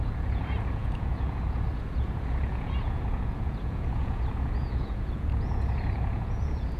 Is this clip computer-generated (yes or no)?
yes